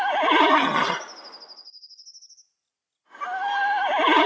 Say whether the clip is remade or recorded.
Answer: recorded